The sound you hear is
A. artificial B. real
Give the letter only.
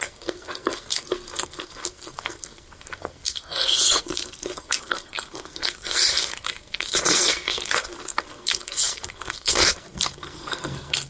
A